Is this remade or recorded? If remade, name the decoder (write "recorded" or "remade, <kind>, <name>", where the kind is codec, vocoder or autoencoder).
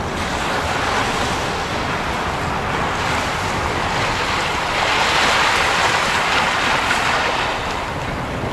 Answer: recorded